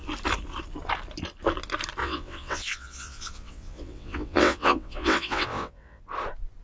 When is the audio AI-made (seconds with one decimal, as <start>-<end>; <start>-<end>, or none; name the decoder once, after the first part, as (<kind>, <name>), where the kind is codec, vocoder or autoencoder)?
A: 2.0-6.0 (vocoder, WaveNeXt)